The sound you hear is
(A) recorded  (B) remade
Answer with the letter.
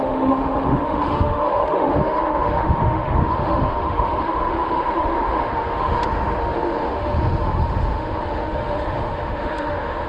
B